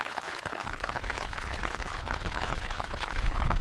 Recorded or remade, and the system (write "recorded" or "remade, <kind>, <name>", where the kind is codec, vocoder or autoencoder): remade, codec, HILCodec